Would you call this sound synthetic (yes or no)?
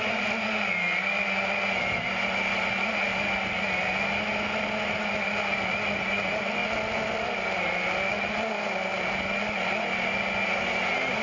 no